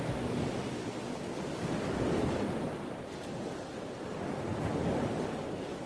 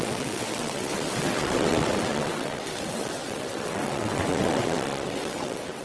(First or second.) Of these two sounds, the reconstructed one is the second